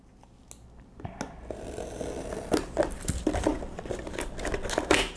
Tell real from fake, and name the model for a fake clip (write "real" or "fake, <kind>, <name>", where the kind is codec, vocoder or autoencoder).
real